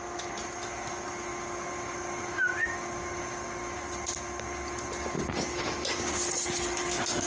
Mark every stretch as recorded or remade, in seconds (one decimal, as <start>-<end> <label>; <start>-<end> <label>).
0.0-7.3 recorded